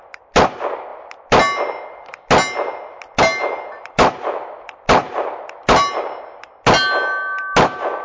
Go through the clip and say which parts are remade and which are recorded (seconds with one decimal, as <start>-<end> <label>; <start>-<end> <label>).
0.0-8.0 recorded